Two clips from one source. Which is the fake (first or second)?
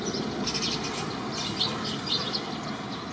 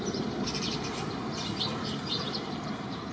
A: second